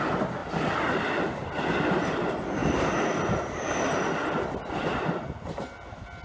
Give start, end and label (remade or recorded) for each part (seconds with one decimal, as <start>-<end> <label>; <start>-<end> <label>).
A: 0.0-6.2 recorded